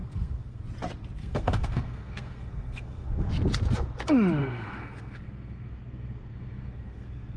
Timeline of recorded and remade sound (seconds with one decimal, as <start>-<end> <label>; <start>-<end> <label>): 0.0-0.6 remade; 0.6-1.2 recorded; 1.2-3.3 remade; 3.3-4.4 recorded; 4.4-7.4 remade